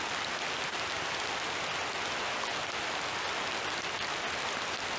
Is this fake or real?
real